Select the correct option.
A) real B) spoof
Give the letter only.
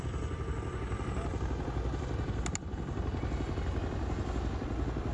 A